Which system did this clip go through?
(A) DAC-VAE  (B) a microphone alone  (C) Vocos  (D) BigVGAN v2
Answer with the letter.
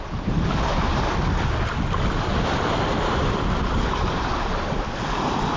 B